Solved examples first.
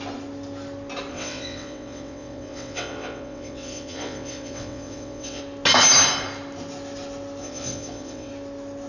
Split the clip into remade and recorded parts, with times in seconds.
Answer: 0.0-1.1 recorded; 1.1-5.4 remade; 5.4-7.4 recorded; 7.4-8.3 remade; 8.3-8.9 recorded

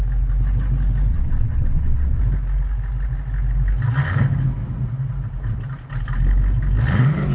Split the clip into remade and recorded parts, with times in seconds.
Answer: 0.0-1.1 recorded; 1.1-2.2 remade; 2.2-7.3 recorded

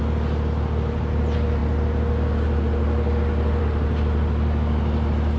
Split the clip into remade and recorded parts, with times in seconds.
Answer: 0.0-5.4 recorded

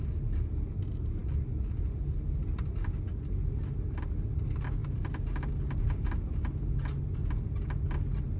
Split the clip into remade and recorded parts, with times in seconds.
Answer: 0.0-8.4 recorded

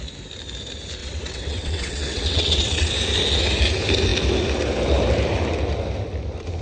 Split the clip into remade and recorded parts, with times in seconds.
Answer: 0.0-1.0 recorded; 1.0-2.9 remade; 2.9-6.6 recorded

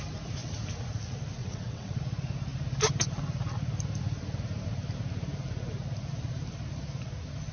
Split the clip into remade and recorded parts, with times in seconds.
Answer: 0.0-1.4 recorded; 1.4-2.0 remade; 2.0-7.5 recorded